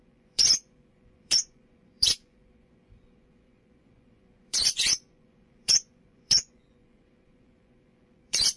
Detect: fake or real fake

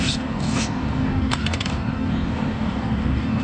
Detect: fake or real fake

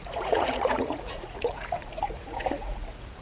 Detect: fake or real fake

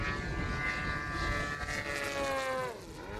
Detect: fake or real real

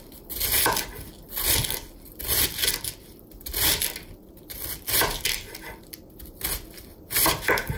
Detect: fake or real real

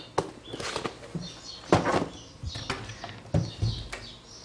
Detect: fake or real real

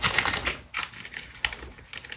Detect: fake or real real